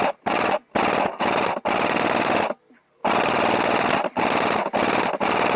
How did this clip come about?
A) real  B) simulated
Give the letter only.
A